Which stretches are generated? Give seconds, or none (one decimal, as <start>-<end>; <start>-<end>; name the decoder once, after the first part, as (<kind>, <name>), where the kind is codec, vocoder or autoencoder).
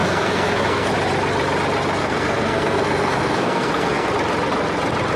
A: 0.0-0.9 (codec, SNAC); 2.0-4.1